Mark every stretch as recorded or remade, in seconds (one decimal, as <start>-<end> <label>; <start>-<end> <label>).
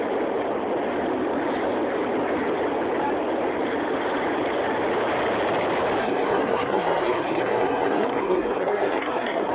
0.0-6.0 recorded; 6.0-9.5 remade